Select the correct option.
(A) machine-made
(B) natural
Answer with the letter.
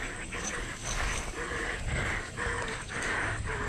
A